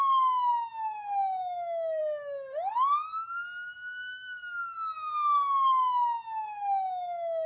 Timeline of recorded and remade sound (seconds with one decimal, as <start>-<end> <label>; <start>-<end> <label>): 0.0-1.4 recorded; 1.4-2.0 remade; 2.0-7.5 recorded